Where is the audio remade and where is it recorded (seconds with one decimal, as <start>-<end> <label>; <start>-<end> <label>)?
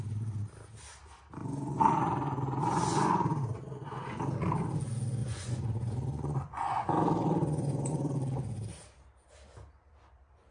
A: 0.0-1.4 recorded; 1.4-4.2 remade; 4.2-5.2 recorded; 5.2-6.9 remade; 6.9-7.4 recorded; 7.4-8.1 remade; 8.1-10.5 recorded